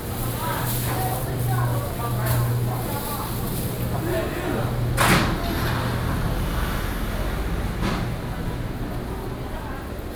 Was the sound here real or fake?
real